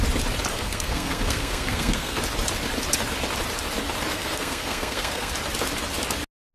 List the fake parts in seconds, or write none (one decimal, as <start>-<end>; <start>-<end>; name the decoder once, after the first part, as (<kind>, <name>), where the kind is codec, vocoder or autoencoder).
0.5-2.2 (codec, SNAC); 4.1-5.3